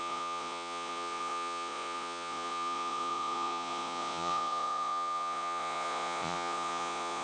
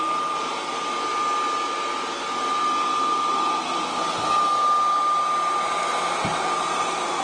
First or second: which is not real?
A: first